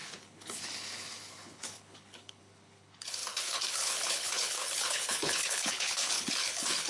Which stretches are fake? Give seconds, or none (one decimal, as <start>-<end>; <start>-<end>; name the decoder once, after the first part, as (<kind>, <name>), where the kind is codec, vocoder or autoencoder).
0.0-6.9 (codec, HILCodec)